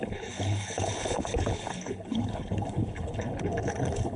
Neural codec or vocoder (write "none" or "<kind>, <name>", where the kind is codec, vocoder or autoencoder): codec, HILCodec